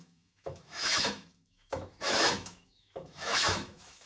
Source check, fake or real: fake